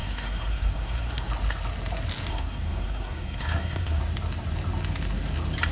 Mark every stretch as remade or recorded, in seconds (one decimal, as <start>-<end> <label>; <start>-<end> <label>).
0.0-1.3 remade; 1.3-2.3 recorded; 2.3-4.0 remade; 4.0-5.7 recorded